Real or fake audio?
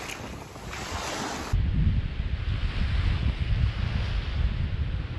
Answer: real